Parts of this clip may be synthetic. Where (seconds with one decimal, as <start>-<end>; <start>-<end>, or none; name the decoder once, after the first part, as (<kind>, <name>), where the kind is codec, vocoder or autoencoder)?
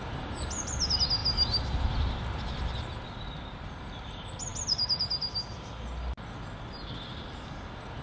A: none